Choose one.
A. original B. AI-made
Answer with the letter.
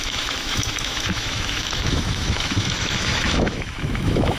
B